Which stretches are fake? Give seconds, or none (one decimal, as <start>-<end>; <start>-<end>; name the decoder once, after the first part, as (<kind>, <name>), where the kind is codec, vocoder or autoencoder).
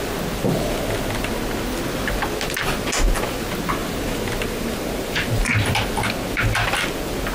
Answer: 3.8-5.8 (vocoder, BigVGAN v2)